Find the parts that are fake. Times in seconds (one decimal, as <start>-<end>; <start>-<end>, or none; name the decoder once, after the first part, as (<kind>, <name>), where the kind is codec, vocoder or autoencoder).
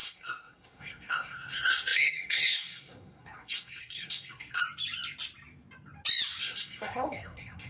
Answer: 0.0-4.6 (codec, SNAC); 6.4-7.7